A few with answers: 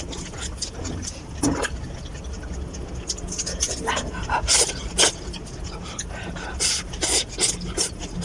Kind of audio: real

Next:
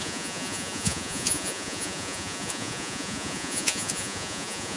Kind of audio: fake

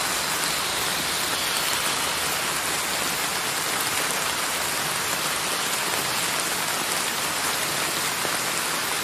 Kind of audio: real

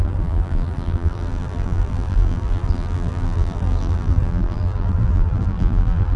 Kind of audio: fake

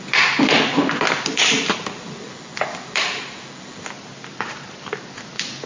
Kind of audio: real